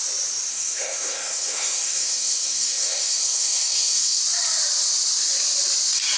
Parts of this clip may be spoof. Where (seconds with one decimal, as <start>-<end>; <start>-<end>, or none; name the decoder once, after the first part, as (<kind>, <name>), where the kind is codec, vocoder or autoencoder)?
0.5-4.2 (codec, SNAC)